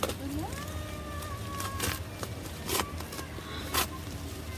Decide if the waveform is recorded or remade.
recorded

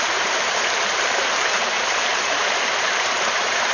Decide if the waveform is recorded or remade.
remade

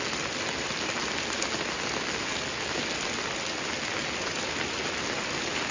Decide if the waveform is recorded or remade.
recorded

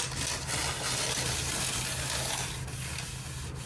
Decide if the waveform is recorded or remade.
recorded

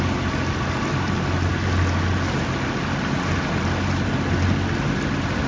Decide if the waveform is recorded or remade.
recorded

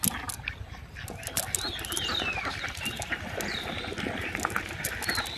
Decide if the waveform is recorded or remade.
recorded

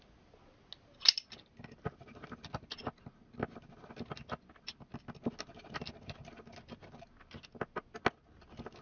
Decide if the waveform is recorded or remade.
recorded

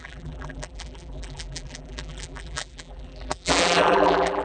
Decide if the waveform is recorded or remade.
remade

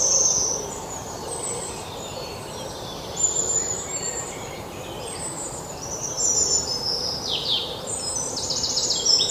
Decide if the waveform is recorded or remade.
remade